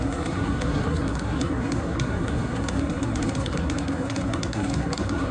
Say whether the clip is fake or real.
fake